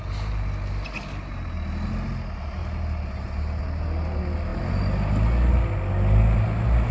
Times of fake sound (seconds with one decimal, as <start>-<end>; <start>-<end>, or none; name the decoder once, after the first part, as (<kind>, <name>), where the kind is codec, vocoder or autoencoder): none